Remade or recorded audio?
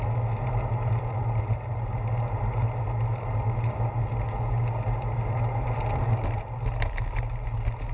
recorded